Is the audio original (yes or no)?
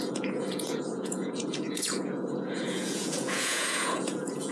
no